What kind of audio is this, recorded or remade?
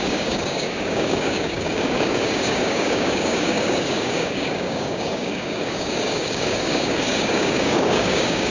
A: remade